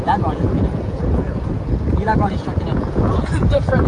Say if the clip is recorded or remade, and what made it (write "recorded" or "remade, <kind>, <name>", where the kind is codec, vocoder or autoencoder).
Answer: remade, vocoder, Vocos